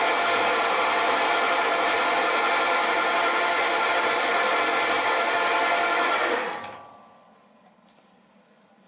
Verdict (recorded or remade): recorded